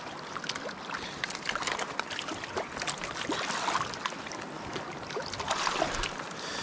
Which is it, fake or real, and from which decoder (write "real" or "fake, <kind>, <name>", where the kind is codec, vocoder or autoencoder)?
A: real